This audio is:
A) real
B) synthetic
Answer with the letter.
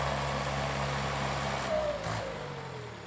A